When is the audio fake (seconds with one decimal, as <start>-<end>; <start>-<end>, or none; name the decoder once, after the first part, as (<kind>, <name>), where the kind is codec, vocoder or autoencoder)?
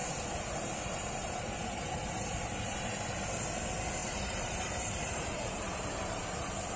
0.0-3.0 (vocoder, BigVGAN v2); 4.0-6.2